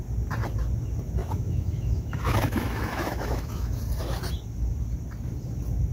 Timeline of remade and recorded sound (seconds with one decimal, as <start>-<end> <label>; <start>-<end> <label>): 0.0-1.2 recorded; 1.2-3.8 remade; 3.8-5.9 recorded